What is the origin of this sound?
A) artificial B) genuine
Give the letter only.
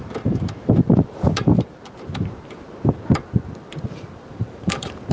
A